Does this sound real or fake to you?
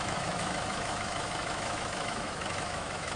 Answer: fake